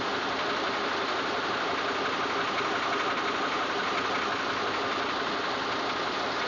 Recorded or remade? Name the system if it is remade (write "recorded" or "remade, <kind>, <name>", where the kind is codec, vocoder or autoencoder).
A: recorded